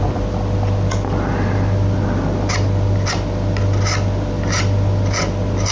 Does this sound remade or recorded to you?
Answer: recorded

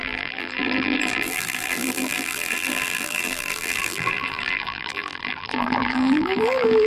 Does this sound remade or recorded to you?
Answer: remade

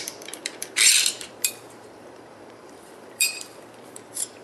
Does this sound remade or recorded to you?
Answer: remade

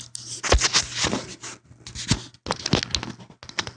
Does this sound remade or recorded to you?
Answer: recorded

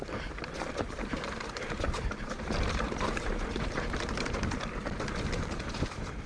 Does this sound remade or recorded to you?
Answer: remade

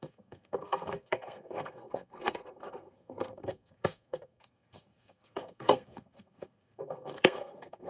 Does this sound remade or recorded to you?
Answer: remade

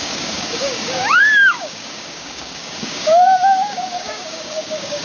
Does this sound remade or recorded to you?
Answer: remade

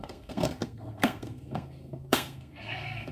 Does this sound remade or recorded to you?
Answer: remade